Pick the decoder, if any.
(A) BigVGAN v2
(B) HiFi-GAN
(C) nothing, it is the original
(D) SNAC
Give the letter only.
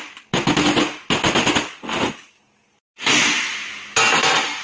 C